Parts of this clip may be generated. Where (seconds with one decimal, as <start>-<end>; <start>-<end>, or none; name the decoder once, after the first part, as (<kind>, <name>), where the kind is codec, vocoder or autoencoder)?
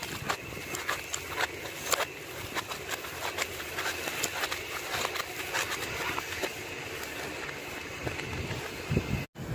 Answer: none